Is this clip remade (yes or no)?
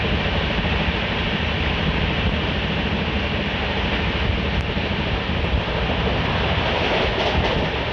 no